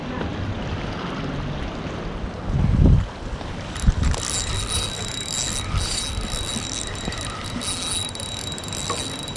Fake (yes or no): no